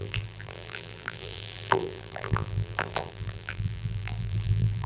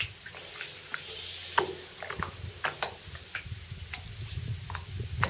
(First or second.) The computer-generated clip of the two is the first